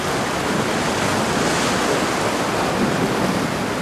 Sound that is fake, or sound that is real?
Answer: real